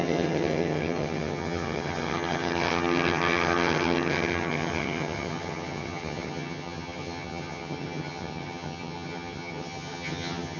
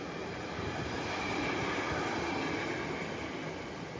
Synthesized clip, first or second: first